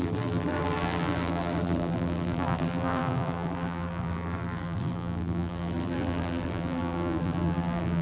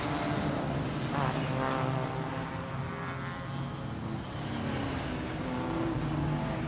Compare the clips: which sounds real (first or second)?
second